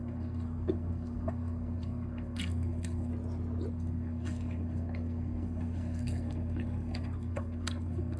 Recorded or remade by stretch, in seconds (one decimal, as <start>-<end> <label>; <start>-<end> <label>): 0.0-3.1 remade; 3.1-3.7 recorded; 3.7-8.2 remade